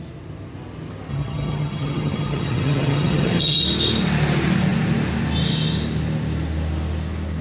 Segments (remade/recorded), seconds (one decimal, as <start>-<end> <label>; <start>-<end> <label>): 0.0-1.1 recorded; 1.1-3.6 remade; 3.6-7.4 recorded